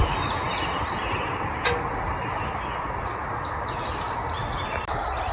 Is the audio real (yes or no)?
yes